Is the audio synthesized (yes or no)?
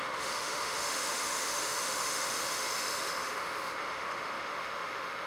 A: yes